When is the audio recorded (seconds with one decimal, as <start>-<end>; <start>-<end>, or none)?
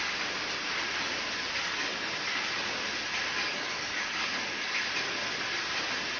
0.0-3.4; 4.8-6.2